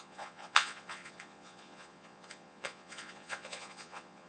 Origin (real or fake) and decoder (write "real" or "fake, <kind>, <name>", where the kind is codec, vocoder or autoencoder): fake, vocoder, Vocos